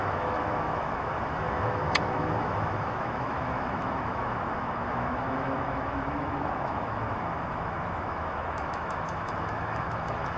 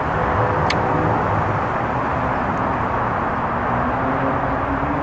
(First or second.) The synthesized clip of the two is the first